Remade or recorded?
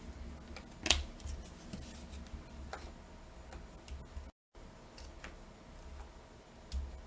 recorded